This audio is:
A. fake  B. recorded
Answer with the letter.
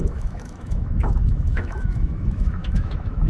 A